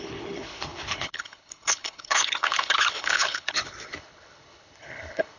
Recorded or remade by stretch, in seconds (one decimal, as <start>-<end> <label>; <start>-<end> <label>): 0.0-5.4 remade